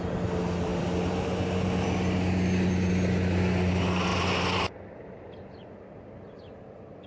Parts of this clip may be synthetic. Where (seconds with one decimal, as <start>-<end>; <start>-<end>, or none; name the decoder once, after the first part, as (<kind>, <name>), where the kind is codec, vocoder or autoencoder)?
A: 0.7-2.9 (vocoder, BigVGAN v2); 4.1-4.9